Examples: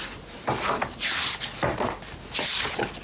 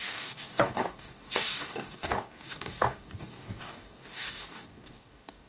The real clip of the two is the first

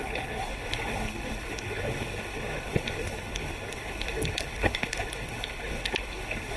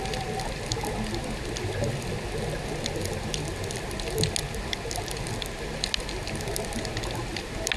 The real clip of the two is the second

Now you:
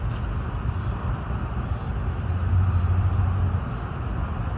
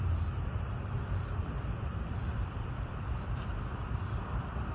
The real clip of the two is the first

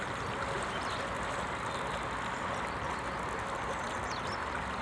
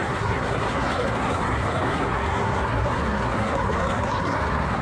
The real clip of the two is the first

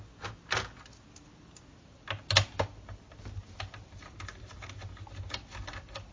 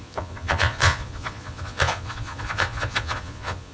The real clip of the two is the first